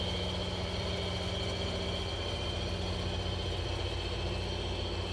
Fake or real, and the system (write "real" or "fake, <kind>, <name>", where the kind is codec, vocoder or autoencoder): real